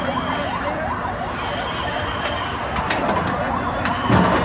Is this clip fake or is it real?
real